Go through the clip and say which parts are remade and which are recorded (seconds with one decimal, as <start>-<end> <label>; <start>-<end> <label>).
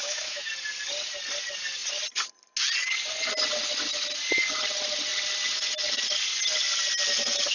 0.0-0.5 remade; 0.5-7.5 recorded